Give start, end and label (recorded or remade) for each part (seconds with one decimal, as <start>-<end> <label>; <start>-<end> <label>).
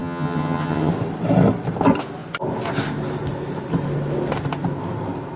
0.0-0.9 remade; 0.9-5.4 recorded